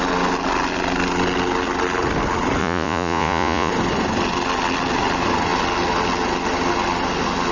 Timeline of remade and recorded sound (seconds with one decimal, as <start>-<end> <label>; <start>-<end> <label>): 0.0-2.6 recorded; 2.6-3.7 remade; 3.7-7.5 recorded